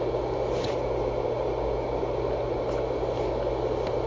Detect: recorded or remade recorded